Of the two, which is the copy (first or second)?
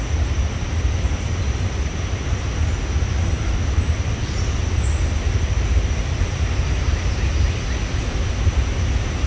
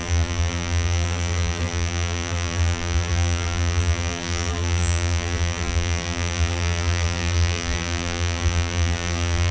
second